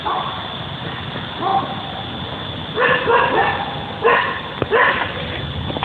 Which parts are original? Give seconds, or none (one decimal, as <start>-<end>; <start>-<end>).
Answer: 0.0-5.8